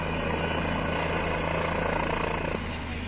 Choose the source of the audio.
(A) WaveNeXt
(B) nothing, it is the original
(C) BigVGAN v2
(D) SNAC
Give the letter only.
B